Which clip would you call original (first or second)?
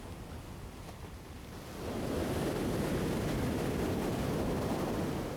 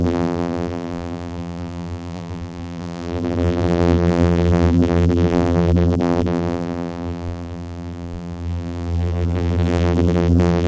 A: first